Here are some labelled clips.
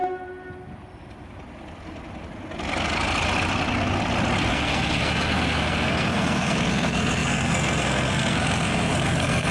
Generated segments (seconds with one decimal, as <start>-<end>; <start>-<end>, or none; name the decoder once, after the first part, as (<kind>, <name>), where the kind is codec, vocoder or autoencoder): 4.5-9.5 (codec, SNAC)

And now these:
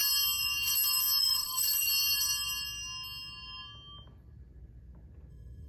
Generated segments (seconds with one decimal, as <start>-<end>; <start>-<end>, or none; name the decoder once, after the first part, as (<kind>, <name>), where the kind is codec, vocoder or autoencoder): 1.2-1.9 (autoencoder, DAC-VAE); 5.3-5.7

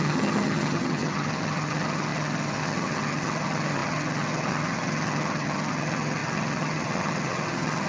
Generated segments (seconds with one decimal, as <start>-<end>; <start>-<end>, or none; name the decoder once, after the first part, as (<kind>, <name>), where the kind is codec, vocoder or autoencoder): 0.0-7.9 (vocoder, HiFi-GAN)

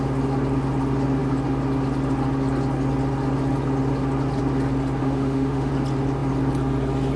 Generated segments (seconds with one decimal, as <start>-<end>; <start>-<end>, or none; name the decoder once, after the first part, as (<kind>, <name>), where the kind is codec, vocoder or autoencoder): 5.0-5.7 (autoencoder, DAC-VAE)

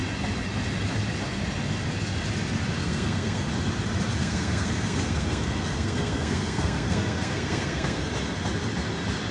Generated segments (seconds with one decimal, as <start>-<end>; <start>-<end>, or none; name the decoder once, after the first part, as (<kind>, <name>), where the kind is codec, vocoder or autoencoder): 2.8-3.5 (codec, SNAC); 4.2-8.1